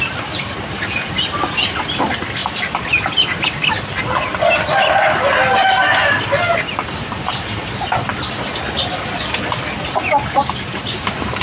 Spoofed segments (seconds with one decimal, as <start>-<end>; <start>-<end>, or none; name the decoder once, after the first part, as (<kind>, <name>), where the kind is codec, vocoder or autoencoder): 2.4-4.4 (vocoder, BigVGAN v2)